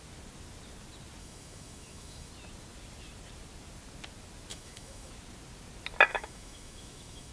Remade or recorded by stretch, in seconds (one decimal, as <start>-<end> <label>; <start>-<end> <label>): 0.0-1.2 recorded; 1.2-2.3 remade; 2.3-4.5 recorded; 4.5-5.1 remade; 5.1-6.1 recorded; 6.1-7.3 remade